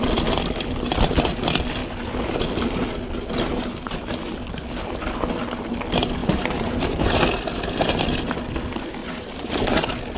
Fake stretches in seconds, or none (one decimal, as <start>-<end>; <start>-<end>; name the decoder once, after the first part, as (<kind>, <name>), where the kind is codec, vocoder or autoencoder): 6.2-7.2 (vocoder, BigVGAN v2); 9.0-9.6